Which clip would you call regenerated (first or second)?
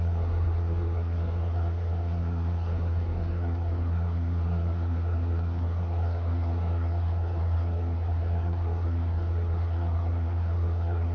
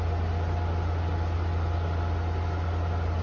first